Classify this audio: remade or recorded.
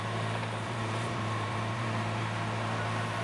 remade